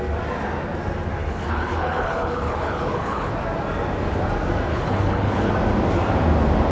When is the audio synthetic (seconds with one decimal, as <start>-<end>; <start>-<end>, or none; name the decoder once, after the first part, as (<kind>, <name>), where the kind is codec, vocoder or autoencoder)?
1.2-3.3 (codec, HILCodec); 4.7-5.5